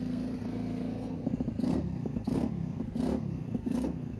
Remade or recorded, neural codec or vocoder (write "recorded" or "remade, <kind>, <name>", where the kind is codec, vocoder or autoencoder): remade, codec, SNAC